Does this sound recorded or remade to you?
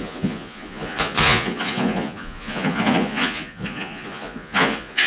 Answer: remade